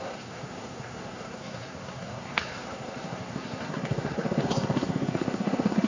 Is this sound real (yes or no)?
no